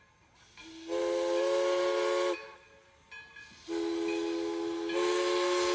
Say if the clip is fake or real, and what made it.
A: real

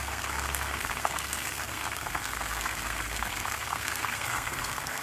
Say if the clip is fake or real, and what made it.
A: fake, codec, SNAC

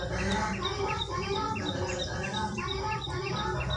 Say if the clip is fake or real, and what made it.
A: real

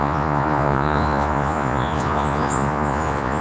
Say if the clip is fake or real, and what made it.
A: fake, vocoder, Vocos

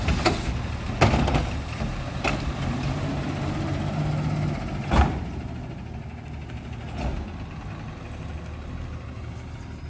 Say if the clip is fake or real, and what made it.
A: real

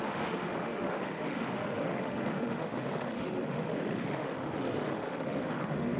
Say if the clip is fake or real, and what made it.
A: fake, autoencoder, DAC-VAE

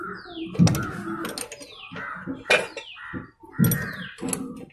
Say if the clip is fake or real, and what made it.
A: real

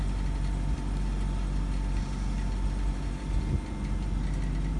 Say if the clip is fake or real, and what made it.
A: real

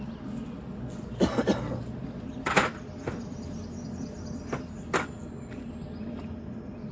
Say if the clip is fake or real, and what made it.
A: real